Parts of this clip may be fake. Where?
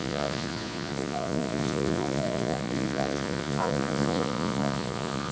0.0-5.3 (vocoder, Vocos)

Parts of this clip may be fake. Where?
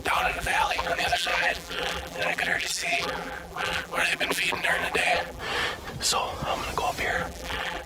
0.0-5.4 (vocoder, BigVGAN v2); 7.1-7.9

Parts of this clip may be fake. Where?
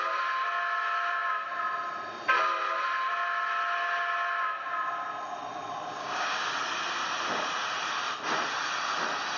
6.0-6.5 (codec, DAC)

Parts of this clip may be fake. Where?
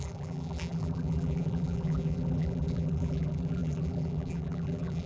0.0-5.1 (vocoder, BigVGAN v2)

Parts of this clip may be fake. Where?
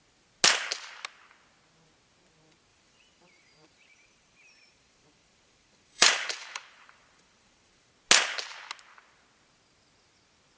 2.7-7.9 (vocoder, BigVGAN v2)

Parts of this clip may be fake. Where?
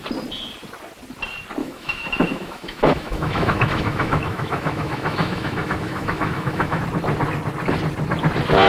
1.6-6.8 (autoencoder, DAC-VAE)